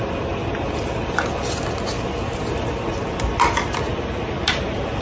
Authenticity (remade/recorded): recorded